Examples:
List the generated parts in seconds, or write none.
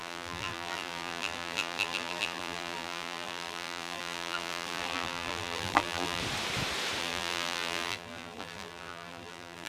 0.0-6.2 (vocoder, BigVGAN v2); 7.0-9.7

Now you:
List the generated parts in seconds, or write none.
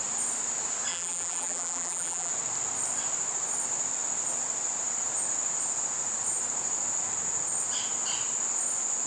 0.9-2.3 (vocoder, BigVGAN v2)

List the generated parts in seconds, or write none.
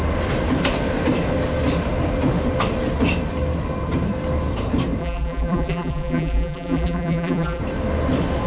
5.0-7.6 (vocoder, BigVGAN v2)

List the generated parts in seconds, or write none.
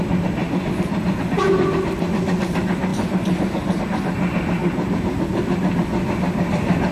0.4-1.2 (vocoder, BigVGAN v2)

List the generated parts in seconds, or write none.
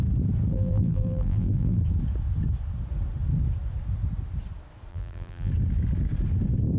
0.5-1.8 (vocoder, BigVGAN v2); 4.9-5.5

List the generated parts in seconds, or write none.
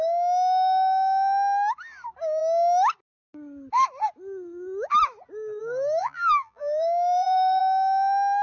6.0-7.6 (vocoder, BigVGAN v2)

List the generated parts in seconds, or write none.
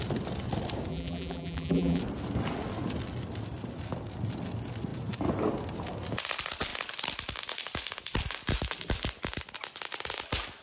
0.9-2.0 (vocoder, BigVGAN v2)